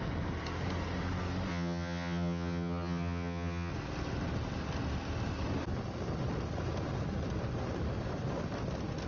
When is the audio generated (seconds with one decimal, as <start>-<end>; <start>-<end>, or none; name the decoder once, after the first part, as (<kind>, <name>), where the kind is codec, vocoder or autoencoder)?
1.5-3.7 (vocoder, HiFi-GAN)